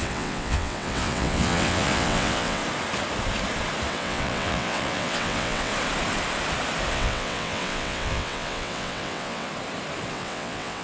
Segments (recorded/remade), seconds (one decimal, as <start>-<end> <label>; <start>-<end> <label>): 0.0-2.6 remade; 2.6-3.9 recorded; 3.9-5.7 remade; 5.7-6.9 recorded; 6.9-9.5 remade; 9.5-10.1 recorded; 10.1-10.8 remade